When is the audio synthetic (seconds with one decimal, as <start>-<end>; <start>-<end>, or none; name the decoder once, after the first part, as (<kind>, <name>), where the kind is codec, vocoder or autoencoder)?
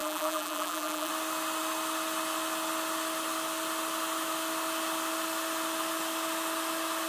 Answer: 0.0-1.1 (vocoder, BigVGAN v2)